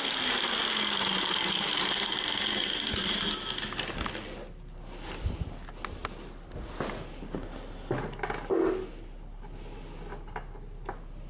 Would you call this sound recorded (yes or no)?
yes